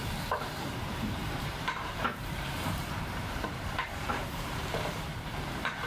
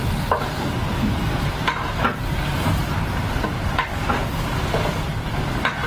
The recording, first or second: second